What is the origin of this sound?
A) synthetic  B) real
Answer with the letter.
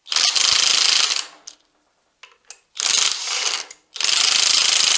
B